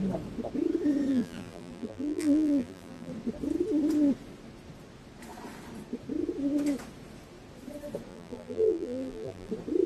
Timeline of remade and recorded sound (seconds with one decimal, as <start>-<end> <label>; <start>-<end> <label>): 0.0-1.1 recorded; 1.1-3.1 remade; 3.1-8.1 recorded; 8.1-9.5 remade; 9.5-9.9 recorded